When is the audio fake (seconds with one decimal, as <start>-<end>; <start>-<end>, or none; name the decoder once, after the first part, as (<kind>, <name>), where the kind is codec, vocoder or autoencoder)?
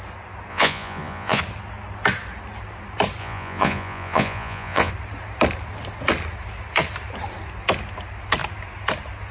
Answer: 0.5-1.4 (vocoder, Vocos); 3.2-4.9